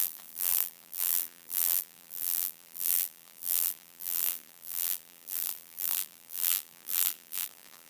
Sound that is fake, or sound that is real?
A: fake